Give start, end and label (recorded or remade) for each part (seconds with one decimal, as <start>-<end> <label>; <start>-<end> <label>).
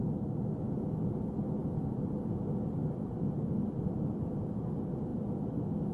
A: 0.0-5.9 recorded